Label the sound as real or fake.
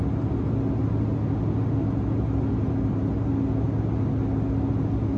real